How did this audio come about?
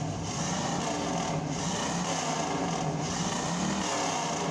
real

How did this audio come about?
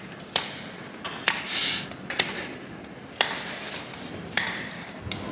real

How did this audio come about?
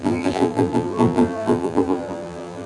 fake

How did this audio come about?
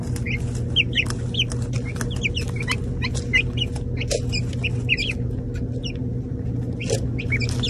real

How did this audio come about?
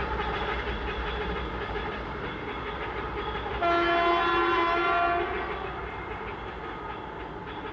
real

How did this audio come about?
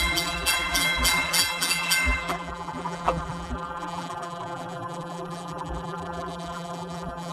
fake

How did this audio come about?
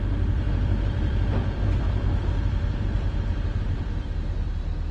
fake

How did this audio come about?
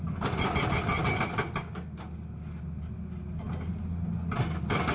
real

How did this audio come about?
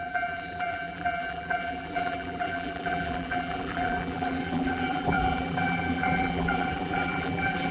fake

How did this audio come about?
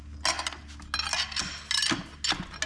real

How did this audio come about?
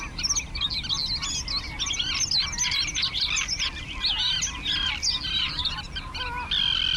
real